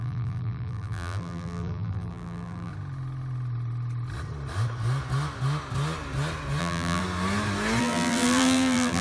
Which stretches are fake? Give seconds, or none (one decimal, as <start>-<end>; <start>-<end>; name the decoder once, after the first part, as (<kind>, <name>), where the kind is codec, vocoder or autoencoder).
0.0-2.7 (vocoder, BigVGAN v2); 6.6-7.0; 7.8-9.0